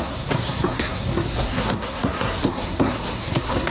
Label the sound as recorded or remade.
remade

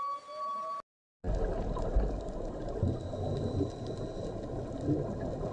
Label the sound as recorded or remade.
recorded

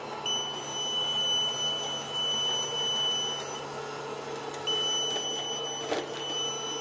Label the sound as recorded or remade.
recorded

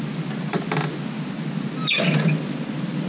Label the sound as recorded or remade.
recorded